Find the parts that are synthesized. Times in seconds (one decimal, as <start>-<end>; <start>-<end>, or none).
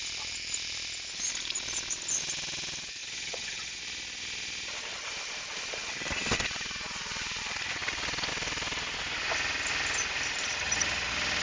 3.0-3.8